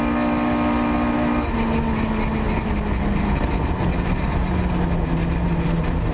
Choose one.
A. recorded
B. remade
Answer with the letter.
A